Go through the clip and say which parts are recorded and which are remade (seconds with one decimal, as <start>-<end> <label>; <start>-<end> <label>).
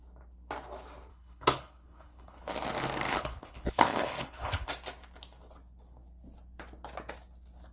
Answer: 0.0-1.1 recorded; 1.1-2.5 remade; 2.5-3.1 recorded; 3.1-4.7 remade; 4.7-7.7 recorded